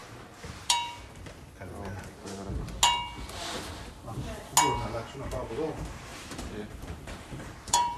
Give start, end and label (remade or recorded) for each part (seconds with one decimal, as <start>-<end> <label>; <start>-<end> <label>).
0.0-0.9 remade; 0.9-6.1 recorded; 6.1-8.0 remade